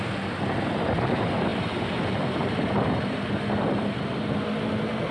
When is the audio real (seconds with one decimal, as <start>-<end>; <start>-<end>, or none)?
0.0-5.1

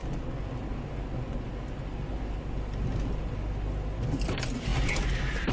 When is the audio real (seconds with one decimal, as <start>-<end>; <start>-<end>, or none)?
0.0-5.5

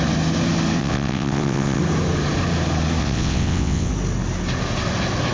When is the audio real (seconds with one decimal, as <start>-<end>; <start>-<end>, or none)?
0.0-0.8; 1.8-3.0; 3.9-5.3

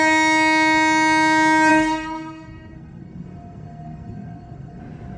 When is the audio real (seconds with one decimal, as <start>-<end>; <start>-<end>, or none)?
0.0-1.7; 4.8-5.2

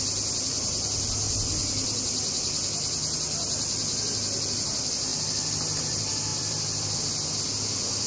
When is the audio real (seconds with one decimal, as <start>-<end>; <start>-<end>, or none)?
0.0-6.3; 7.3-8.1

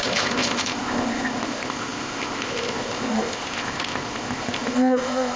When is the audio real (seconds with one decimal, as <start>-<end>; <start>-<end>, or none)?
none

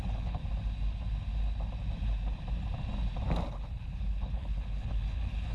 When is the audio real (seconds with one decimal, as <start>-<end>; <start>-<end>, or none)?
0.4-3.4